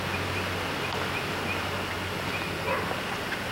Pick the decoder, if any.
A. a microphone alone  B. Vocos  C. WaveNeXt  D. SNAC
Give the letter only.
A